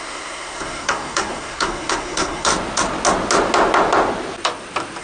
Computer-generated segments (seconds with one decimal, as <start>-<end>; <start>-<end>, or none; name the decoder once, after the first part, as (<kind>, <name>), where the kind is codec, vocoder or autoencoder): 0.0-2.5 (codec, SNAC)